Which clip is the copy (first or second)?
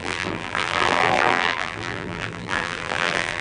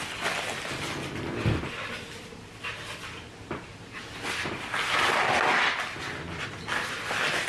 first